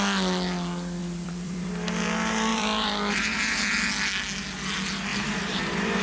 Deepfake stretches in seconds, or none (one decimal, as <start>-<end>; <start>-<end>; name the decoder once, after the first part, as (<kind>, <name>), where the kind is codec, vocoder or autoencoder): 1.0-1.7 (vocoder, BigVGAN v2); 2.5-3.2; 5.1-6.0